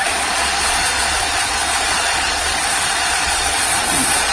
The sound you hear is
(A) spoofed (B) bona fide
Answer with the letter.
A